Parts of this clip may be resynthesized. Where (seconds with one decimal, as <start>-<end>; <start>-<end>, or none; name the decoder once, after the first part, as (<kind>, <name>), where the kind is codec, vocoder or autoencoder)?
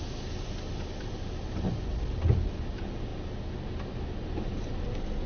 none